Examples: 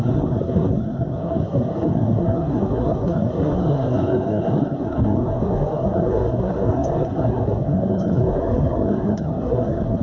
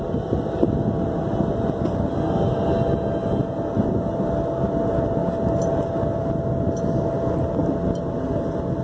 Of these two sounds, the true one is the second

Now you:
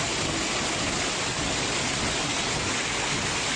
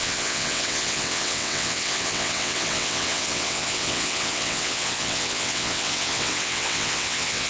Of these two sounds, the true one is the first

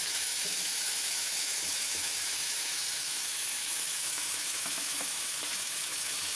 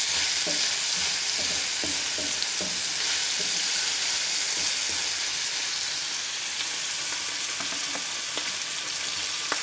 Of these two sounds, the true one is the second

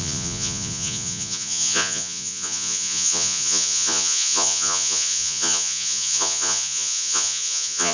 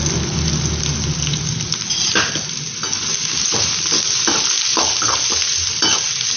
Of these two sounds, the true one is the second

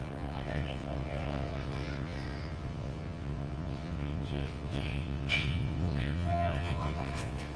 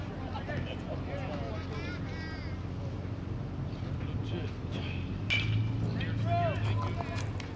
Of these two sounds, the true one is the second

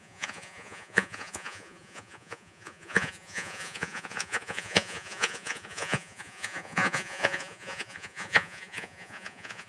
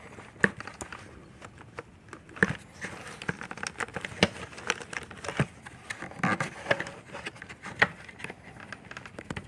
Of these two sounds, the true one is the second